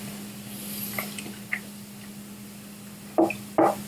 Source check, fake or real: real